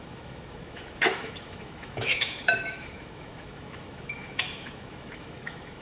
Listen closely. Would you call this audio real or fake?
fake